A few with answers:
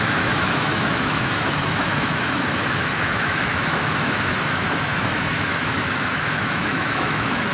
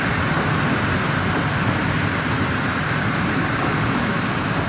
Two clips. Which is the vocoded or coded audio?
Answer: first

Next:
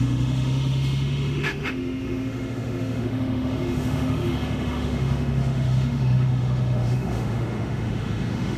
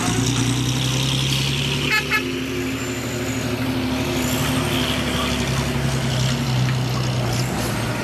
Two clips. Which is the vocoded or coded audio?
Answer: first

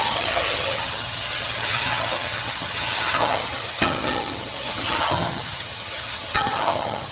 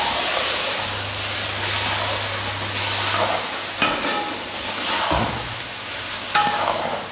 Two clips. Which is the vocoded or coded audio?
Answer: first